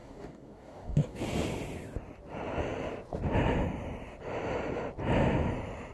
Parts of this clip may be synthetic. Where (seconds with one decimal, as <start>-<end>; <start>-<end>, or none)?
0.0-1.2